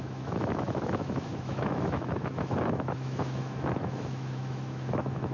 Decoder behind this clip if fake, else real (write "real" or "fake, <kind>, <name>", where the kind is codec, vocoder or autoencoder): fake, autoencoder, DAC-VAE